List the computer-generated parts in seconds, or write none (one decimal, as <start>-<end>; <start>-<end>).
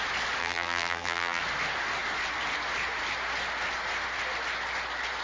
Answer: 0.4-1.4